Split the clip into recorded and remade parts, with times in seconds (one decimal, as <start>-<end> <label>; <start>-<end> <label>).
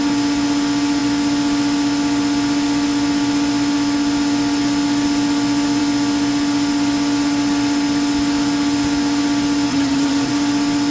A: 0.0-9.7 recorded; 9.7-10.3 remade; 10.3-10.9 recorded